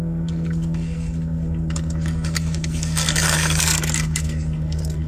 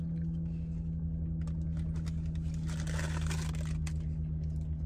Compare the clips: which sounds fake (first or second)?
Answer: first